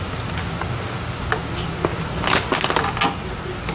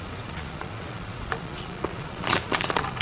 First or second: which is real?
first